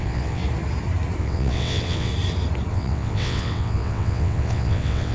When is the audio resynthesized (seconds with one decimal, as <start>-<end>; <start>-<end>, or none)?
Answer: 0.0-0.4; 1.2-2.1; 2.7-5.1